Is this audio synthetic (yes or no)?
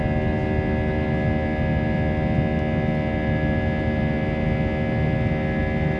no